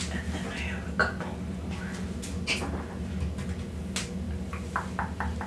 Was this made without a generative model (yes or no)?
yes